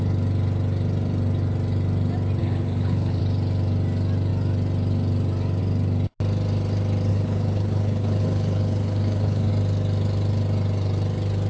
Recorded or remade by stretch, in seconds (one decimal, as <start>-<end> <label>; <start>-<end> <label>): 0.0-2.4 recorded; 2.4-3.2 remade; 3.2-7.1 recorded; 7.1-9.5 remade; 9.5-11.5 recorded